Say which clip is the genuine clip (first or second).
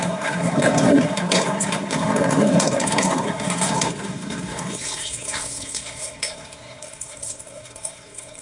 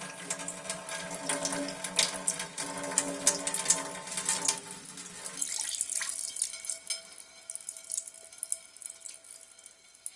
second